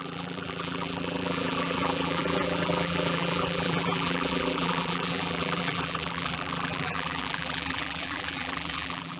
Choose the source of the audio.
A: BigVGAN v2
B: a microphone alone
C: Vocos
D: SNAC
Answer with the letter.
A